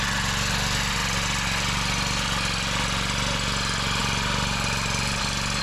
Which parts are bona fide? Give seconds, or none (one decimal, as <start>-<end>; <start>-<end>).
0.0-5.6